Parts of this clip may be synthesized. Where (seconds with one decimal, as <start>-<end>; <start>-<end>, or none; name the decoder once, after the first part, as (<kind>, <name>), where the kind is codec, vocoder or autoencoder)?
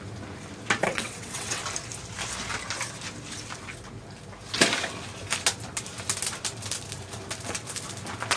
0.8-1.6 (vocoder, WaveNeXt)